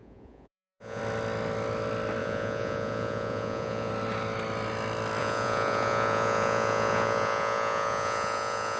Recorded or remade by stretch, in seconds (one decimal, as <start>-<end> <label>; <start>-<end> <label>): 0.0-1.0 remade; 1.0-2.2 recorded; 2.2-3.9 remade; 3.9-5.2 recorded; 5.2-8.8 remade